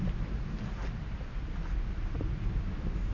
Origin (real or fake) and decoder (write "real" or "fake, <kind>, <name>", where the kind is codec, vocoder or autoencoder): real